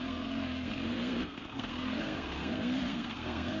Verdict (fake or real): fake